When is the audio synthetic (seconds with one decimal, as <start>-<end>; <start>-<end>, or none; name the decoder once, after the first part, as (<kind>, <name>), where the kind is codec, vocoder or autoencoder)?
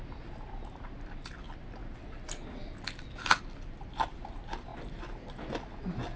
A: none